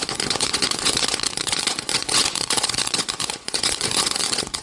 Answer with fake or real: fake